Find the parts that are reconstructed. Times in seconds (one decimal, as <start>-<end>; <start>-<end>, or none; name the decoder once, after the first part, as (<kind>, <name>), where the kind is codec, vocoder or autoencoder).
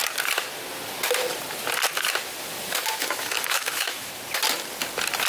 3.0-4.1 (autoencoder, DAC-VAE)